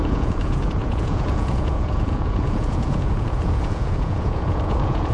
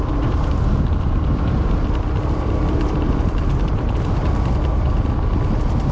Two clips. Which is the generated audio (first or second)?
first